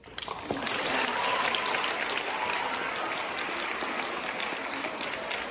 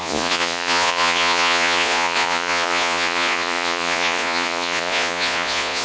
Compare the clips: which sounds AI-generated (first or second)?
second